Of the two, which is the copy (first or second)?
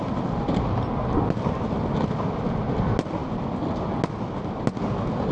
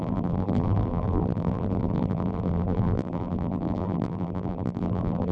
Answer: second